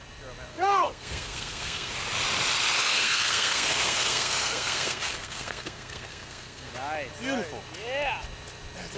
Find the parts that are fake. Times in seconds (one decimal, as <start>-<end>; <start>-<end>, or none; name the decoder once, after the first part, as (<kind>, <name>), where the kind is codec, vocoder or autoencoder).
0.5-1.9 (codec, SNAC); 2.9-6.7